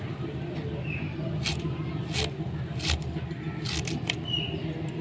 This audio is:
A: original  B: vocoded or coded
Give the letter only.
A